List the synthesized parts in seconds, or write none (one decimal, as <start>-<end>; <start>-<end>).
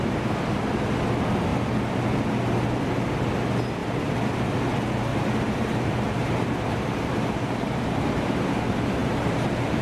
3.8-4.6; 5.1-8.2; 9.0-9.8